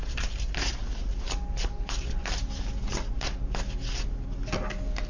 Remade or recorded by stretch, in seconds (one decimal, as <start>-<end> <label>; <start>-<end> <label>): 0.0-5.1 recorded